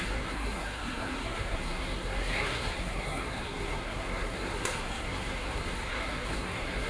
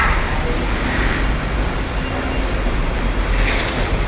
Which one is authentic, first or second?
second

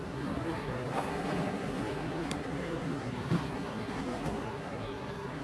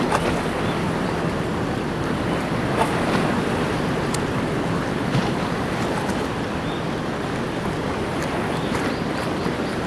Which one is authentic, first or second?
second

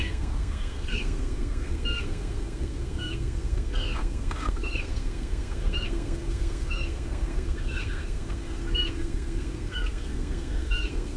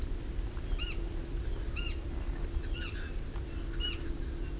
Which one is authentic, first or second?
second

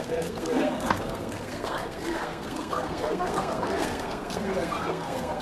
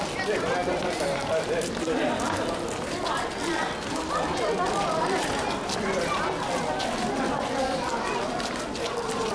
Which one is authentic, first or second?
second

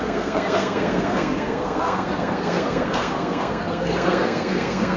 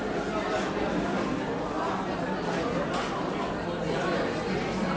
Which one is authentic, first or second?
second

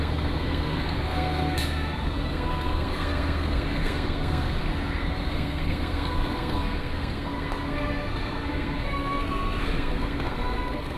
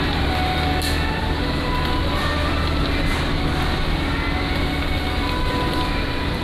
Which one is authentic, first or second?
second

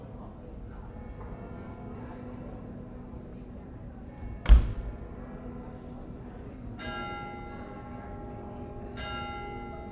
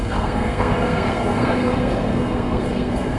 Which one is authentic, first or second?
first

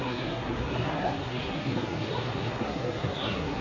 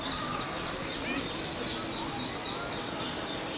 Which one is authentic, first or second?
second